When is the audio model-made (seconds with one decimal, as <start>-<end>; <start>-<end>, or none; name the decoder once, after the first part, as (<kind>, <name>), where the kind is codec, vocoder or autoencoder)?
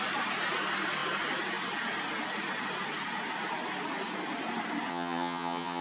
4.9-5.8 (vocoder, HiFi-GAN)